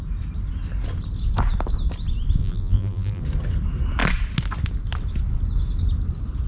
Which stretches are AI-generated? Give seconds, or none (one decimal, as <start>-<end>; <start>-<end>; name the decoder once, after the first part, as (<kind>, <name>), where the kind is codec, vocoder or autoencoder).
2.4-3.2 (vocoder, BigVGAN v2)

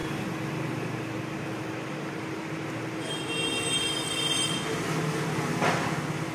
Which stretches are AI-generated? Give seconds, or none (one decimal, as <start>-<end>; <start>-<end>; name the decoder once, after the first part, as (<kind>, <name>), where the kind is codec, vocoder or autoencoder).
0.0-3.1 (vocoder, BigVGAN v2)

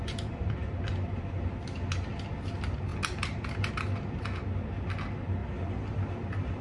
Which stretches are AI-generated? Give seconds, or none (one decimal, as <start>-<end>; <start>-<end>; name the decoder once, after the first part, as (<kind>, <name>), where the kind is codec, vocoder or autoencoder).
0.0-1.5 (vocoder, BigVGAN v2)

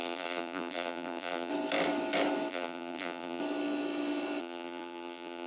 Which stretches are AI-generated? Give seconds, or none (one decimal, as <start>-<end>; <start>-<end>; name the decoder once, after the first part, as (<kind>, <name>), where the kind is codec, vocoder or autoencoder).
0.0-1.5 (vocoder, BigVGAN v2); 2.5-3.4; 4.4-5.5